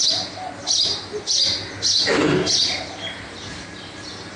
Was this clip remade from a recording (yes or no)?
no